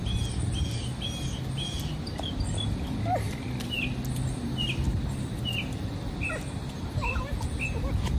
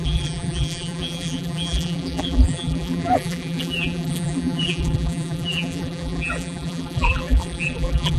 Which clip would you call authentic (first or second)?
first